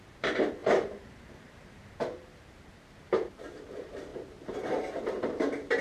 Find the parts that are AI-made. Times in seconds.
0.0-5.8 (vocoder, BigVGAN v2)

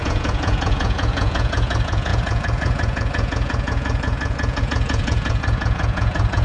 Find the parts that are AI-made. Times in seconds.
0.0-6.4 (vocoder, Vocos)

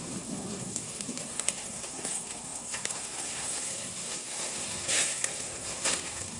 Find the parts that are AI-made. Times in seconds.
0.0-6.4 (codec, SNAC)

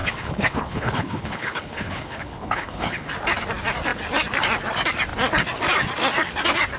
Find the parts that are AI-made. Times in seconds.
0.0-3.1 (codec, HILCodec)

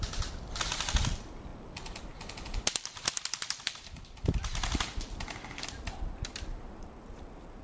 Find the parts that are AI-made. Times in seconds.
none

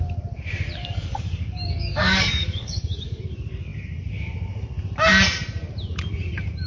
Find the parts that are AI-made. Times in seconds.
0.8-3.2 (codec, DAC)